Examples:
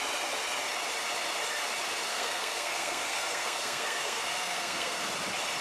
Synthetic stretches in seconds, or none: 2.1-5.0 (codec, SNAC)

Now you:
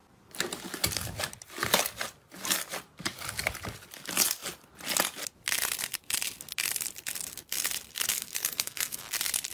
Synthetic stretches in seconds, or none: 8.1-9.0 (codec, SNAC)

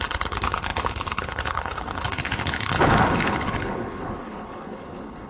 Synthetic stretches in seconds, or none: 0.0-5.3 (codec, HILCodec)

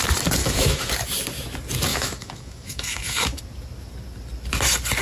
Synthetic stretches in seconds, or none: 0.4-0.9 (autoencoder, DAC-VAE); 1.9-3.4

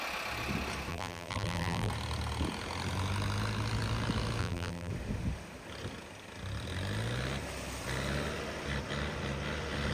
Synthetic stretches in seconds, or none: 0.9-1.9 (vocoder, BigVGAN v2); 4.4-4.9

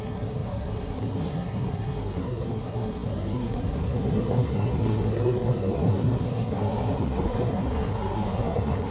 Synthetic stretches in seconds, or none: 0.0-8.9 (codec, SNAC)

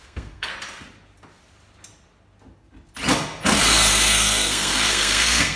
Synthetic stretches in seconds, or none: 0.0-0.5 (codec, SNAC); 3.9-5.6

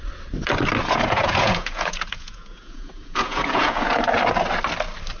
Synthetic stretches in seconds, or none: 0.8-3.9 (vocoder, Vocos)